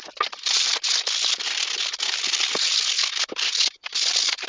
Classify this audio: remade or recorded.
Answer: recorded